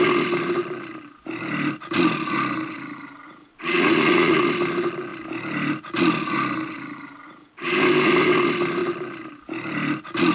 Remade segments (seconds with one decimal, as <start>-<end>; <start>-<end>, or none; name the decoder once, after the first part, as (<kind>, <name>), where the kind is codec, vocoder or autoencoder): 3.5-4.4 (vocoder, Vocos)